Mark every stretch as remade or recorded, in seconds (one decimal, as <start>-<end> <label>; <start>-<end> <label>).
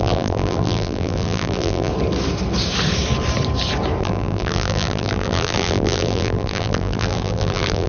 0.0-1.9 remade; 1.9-4.0 recorded; 4.0-7.9 remade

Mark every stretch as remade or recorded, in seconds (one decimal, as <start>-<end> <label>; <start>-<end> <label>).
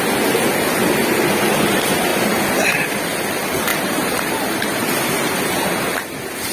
0.0-3.7 recorded; 3.7-4.4 remade; 4.4-6.5 recorded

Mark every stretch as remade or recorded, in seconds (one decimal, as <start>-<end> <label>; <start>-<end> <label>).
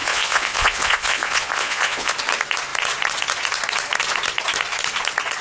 0.0-2.1 remade; 2.1-5.4 recorded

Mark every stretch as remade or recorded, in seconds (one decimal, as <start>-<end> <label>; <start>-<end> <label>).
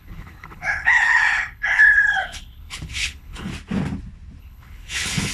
0.0-3.5 remade; 3.5-4.4 recorded; 4.4-5.3 remade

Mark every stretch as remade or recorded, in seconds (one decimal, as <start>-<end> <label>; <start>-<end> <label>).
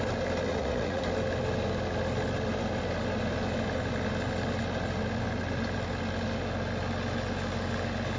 0.0-0.5 recorded; 0.5-1.0 remade; 1.0-8.2 recorded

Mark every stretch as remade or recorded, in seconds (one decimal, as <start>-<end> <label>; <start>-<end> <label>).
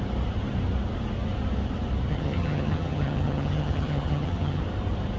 0.0-2.1 recorded; 2.1-4.6 remade; 4.6-5.2 recorded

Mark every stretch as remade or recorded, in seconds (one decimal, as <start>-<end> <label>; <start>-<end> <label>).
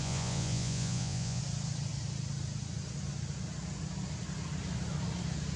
0.0-1.4 remade; 1.4-5.6 recorded